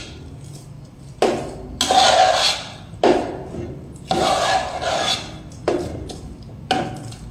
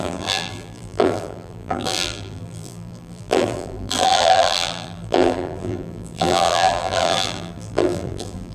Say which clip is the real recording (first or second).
first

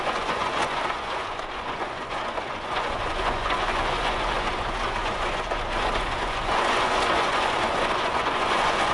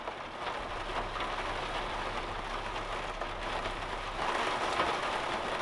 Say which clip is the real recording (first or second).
second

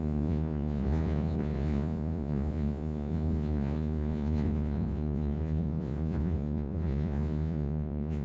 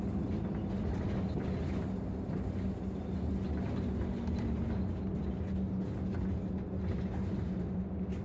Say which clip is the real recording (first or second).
second